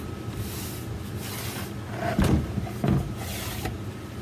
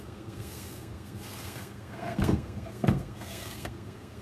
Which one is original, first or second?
first